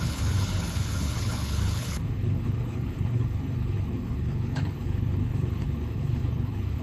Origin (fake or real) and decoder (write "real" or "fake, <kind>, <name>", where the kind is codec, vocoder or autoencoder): fake, codec, HILCodec